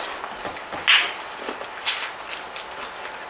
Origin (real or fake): real